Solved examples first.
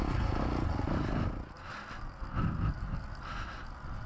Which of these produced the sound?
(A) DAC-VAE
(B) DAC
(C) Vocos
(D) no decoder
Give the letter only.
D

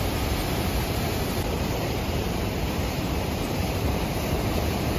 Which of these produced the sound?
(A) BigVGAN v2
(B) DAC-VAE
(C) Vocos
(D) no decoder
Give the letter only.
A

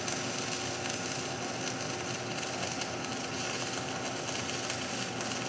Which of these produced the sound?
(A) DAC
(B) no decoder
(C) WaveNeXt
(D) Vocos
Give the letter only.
B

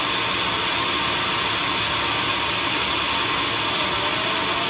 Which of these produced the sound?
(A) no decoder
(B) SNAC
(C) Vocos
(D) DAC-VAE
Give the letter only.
A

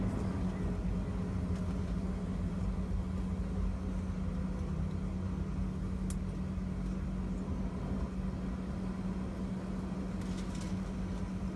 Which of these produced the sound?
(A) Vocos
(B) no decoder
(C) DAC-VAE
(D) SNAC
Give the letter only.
B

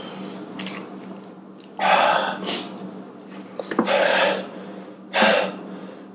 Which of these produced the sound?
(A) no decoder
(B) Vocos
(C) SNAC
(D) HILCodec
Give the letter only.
A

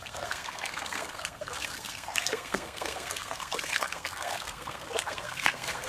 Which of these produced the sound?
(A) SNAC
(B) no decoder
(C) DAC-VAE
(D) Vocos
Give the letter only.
A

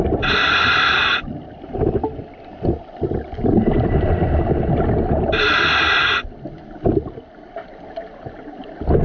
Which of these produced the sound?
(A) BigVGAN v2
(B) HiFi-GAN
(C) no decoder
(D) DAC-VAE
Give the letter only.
C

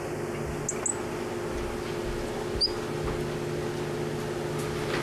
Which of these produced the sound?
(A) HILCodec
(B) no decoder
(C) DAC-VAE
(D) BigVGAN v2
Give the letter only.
B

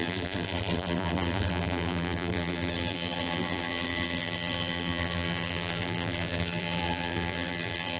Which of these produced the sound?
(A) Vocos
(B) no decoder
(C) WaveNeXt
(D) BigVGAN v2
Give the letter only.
D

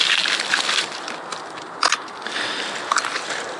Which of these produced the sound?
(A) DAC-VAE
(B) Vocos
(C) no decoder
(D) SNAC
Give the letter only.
C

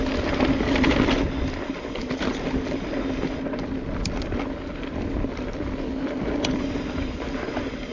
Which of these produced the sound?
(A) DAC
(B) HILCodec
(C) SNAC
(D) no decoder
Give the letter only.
D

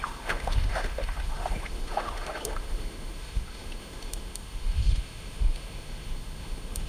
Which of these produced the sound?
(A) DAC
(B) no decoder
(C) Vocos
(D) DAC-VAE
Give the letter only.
D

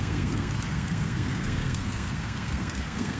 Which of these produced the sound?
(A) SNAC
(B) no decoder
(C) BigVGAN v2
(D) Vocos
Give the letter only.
A